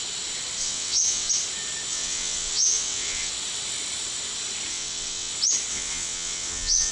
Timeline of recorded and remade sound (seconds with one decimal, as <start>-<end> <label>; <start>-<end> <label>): 0.0-0.6 recorded; 0.6-1.3 remade; 1.3-1.9 recorded; 1.9-3.3 remade; 3.3-4.7 recorded; 4.7-5.3 remade; 5.3-5.7 recorded; 5.7-6.9 remade